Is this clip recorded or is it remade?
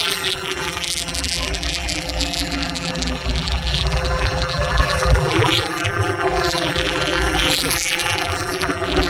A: remade